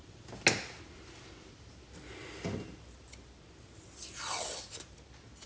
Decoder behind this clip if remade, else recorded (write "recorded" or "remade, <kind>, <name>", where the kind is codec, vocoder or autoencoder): recorded